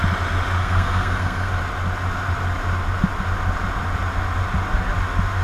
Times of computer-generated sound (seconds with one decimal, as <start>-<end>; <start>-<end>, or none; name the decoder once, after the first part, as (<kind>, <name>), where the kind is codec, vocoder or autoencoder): 0.6-1.5 (codec, SNAC)